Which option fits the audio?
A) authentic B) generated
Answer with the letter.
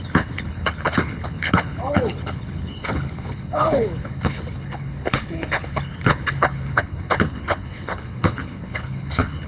B